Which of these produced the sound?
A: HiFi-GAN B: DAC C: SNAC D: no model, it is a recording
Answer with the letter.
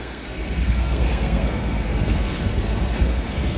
C